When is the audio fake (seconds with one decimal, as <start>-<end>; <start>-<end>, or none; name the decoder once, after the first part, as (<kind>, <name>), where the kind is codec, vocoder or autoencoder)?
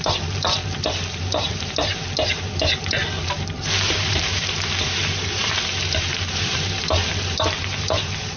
0.0-8.4 (vocoder, BigVGAN v2)